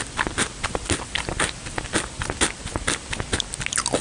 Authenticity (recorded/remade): recorded